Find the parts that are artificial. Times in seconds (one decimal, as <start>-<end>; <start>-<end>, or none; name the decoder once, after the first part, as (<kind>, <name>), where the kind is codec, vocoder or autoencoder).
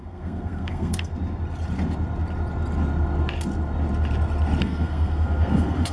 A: 0.0-1.1 (codec, SNAC); 4.6-5.9